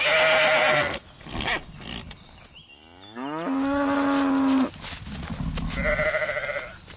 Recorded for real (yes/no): yes